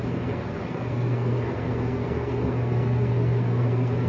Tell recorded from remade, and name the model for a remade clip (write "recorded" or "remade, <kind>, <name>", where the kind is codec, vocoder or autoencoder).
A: remade, codec, SNAC